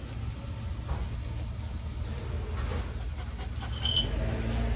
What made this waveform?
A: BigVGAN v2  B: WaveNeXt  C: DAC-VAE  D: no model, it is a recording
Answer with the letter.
D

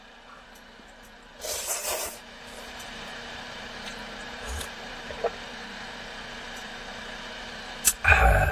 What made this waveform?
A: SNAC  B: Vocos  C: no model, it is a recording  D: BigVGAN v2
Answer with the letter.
D